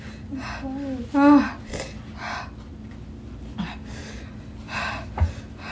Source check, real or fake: real